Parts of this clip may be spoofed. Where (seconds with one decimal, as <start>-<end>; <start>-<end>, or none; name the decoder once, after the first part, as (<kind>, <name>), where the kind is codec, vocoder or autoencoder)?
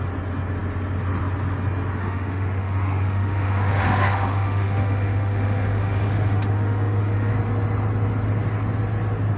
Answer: 2.0-7.3 (autoencoder, DAC-VAE)